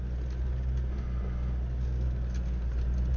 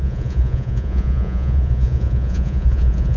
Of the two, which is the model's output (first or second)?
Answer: second